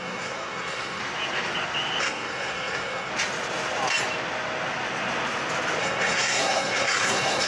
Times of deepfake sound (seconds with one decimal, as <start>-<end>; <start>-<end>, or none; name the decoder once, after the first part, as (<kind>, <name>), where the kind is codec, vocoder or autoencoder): 0.0-1.0 (codec, SNAC); 2.0-3.1; 5.8-7.5